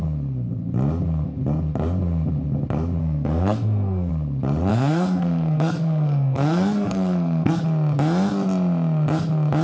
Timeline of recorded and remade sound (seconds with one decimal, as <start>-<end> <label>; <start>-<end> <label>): 0.0-3.0 recorded; 3.0-4.1 remade; 4.1-4.7 recorded; 4.7-7.6 remade; 7.6-9.6 recorded

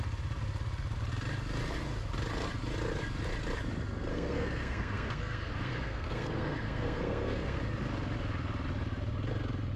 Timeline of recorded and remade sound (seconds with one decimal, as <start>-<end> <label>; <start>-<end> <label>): 0.0-4.1 recorded; 4.1-7.6 remade; 7.6-9.8 recorded